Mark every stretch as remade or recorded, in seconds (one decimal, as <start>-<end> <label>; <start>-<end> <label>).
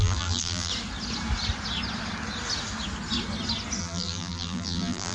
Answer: 0.0-0.7 remade; 0.7-3.8 recorded; 3.8-5.1 remade